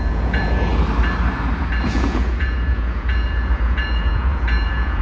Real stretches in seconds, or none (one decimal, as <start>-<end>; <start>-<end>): 0.7-1.8